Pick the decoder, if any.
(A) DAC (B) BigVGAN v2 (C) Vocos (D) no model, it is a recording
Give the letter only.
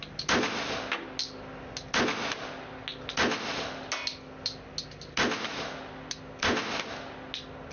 D